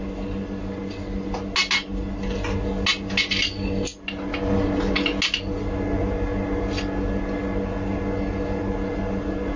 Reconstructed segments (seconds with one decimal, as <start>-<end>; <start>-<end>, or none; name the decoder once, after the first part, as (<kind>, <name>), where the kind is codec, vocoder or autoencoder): none